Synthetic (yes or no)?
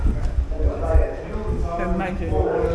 no